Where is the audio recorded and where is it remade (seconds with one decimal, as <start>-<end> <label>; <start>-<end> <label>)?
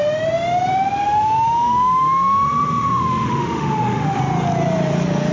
0.0-1.0 recorded; 1.0-4.2 remade; 4.2-5.3 recorded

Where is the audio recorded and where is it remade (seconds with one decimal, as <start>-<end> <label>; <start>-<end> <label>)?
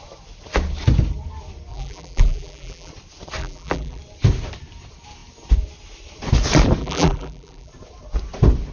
0.0-1.7 recorded; 1.7-2.9 remade; 2.9-3.4 recorded; 3.4-4.0 remade; 4.0-6.8 recorded; 6.8-7.7 remade; 7.7-8.7 recorded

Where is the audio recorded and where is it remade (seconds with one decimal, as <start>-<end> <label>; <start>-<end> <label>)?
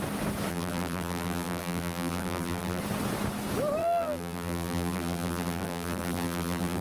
0.0-0.5 recorded; 0.5-2.8 remade; 2.8-3.8 recorded; 3.8-6.8 remade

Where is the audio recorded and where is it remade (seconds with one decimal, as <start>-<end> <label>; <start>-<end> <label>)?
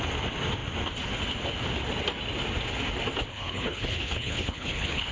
0.0-3.3 recorded; 3.3-5.1 remade